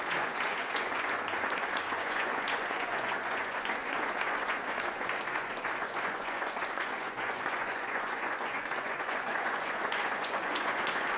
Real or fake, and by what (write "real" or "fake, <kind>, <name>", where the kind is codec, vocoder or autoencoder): fake, vocoder, Vocos